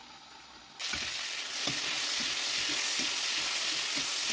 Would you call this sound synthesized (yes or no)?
no